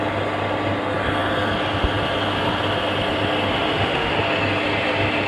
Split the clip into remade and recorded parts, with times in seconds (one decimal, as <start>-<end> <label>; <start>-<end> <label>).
0.0-3.5 recorded; 3.5-4.1 remade; 4.1-5.3 recorded